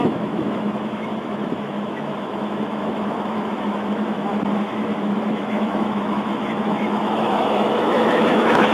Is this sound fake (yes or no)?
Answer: yes